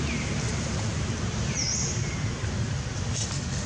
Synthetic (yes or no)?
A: no